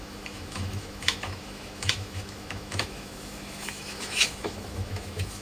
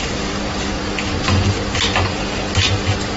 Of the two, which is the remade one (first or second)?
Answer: first